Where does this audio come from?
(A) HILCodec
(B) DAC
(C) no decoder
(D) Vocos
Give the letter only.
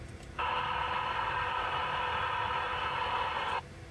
C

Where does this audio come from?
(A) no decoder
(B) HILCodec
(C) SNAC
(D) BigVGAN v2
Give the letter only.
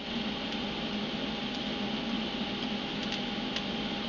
A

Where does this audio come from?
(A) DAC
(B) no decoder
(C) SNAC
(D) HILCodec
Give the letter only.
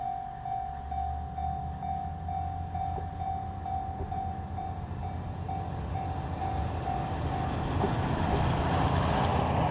B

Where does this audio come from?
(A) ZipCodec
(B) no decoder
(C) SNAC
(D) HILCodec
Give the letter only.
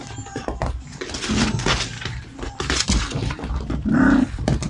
B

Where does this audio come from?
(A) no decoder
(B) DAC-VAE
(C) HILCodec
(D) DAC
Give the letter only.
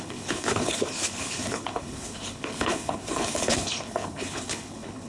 C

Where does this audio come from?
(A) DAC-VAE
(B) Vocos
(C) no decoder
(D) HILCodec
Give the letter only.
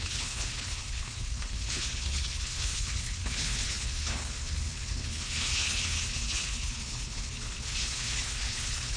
D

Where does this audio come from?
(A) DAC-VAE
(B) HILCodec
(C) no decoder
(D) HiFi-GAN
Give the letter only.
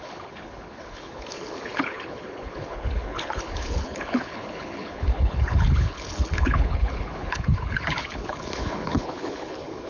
B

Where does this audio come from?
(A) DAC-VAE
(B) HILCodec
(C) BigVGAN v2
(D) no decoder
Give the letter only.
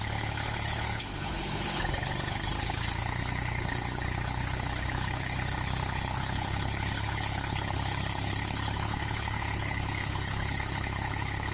B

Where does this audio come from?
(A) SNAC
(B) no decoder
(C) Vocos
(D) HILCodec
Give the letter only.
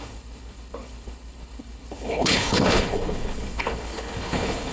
D